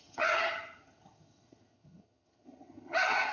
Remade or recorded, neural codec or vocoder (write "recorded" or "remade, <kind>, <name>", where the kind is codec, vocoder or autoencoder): remade, vocoder, HiFi-GAN